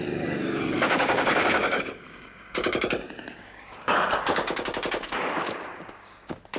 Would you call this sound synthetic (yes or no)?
yes